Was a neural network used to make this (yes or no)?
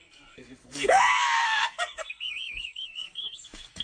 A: yes